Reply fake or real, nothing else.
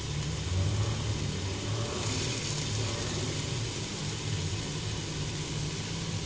real